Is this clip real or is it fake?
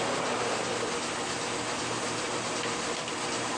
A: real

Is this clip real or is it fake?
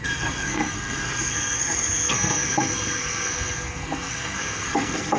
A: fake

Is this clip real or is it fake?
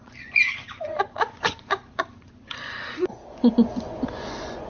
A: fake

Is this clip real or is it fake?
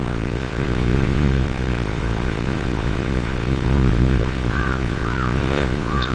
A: fake